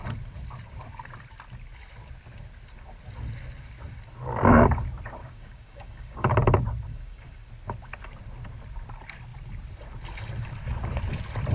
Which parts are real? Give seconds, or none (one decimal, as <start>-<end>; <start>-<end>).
0.0-5.2; 6.3-6.9; 7.5-11.5